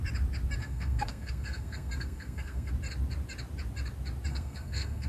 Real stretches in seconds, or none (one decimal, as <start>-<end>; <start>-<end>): 0.0-0.6; 2.7-4.3